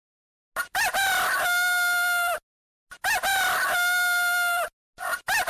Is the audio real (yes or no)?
yes